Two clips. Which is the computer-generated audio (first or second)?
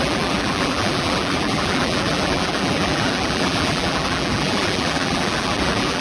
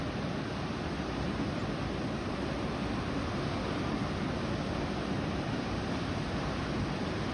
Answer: first